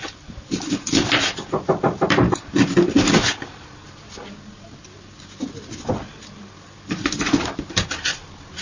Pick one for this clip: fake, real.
real